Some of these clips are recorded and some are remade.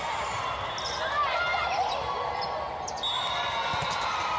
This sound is recorded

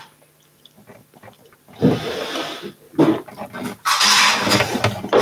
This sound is recorded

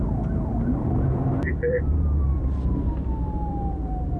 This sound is remade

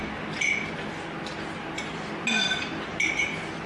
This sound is recorded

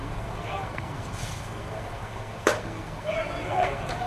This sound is remade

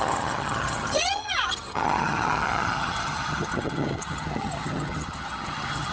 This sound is remade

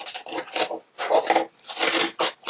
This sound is recorded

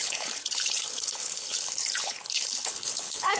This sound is remade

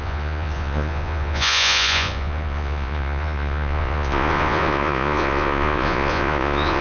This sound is remade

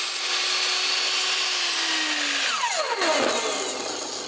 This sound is recorded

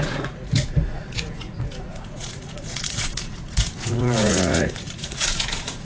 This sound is remade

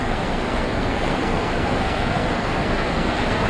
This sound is remade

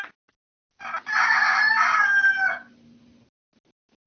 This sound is recorded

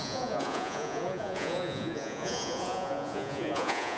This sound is remade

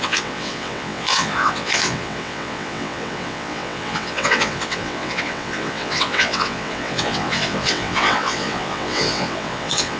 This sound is remade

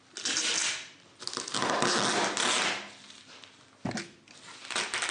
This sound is recorded